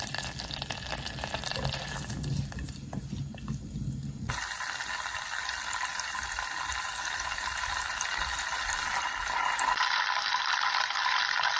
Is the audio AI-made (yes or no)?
no